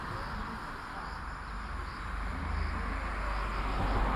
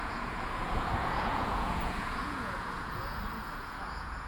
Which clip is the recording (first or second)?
first